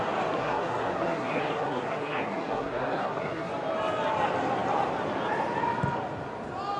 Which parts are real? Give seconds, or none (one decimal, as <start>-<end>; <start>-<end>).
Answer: 0.0-0.4; 3.5-6.8